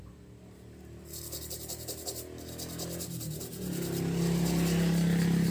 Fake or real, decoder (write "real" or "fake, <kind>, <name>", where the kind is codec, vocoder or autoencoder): real